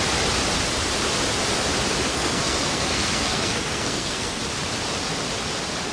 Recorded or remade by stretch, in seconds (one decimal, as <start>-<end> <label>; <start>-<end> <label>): 0.0-2.1 recorded; 2.1-4.4 remade; 4.4-5.9 recorded